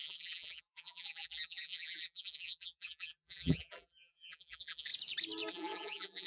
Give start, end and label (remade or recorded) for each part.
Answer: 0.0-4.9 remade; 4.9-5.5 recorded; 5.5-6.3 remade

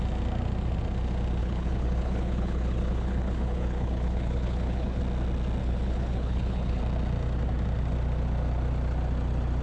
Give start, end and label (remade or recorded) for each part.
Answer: 0.0-1.4 recorded; 1.4-5.0 remade; 5.0-5.6 recorded; 5.6-6.8 remade; 6.8-9.6 recorded

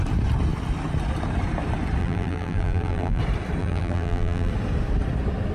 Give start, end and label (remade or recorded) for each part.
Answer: 0.0-2.0 recorded; 2.0-3.2 remade; 3.2-3.6 recorded; 3.6-4.5 remade; 4.5-5.5 recorded

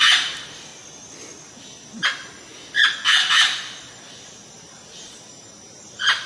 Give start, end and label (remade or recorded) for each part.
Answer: 0.0-0.7 remade; 0.7-4.5 recorded; 4.5-6.3 remade

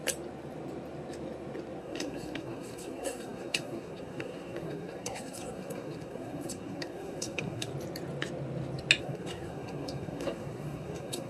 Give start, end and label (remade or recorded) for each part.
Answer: 0.0-1.8 recorded; 1.8-7.7 remade; 7.7-9.0 recorded; 9.0-11.3 remade

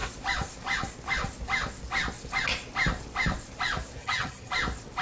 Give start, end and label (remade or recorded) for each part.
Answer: 0.0-4.0 recorded; 4.0-4.5 remade; 4.5-5.0 recorded

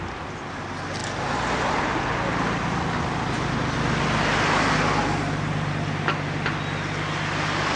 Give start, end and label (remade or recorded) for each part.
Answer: 0.0-7.8 recorded

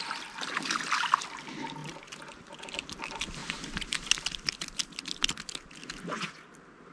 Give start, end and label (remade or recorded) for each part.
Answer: 0.0-6.9 recorded